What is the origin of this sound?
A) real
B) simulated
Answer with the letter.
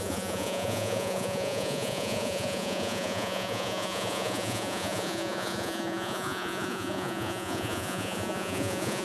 B